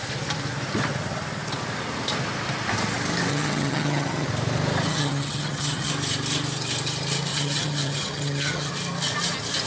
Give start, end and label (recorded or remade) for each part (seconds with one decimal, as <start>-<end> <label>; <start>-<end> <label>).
0.0-3.3 recorded; 3.3-4.3 remade; 4.3-4.9 recorded; 4.9-5.9 remade; 5.9-7.3 recorded; 7.3-8.7 remade; 8.7-9.7 recorded